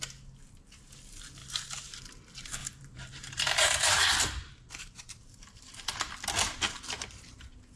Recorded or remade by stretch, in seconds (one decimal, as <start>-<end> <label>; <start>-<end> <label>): 0.0-1.4 recorded; 1.4-2.0 remade; 2.0-2.6 recorded; 2.6-6.1 remade; 6.1-7.8 recorded

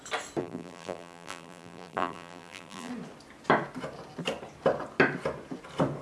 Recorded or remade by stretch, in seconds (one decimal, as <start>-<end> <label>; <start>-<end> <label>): 0.0-0.4 recorded; 0.4-2.9 remade; 2.9-6.0 recorded

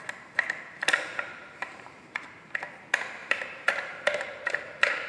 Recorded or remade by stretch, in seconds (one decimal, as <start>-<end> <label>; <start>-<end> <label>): 0.0-1.3 recorded; 1.3-2.7 remade; 2.7-3.2 recorded; 3.2-5.1 remade

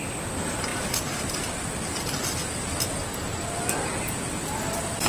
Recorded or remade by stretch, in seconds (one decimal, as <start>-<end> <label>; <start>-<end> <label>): 0.0-0.7 remade; 0.7-3.2 recorded; 3.2-5.1 remade